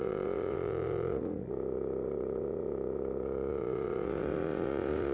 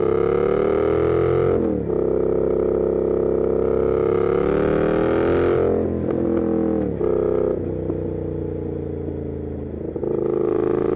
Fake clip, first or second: first